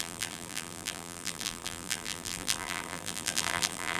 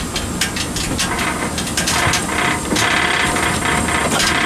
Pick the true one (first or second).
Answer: second